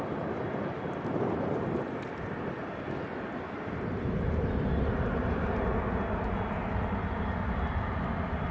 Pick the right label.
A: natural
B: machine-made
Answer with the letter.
A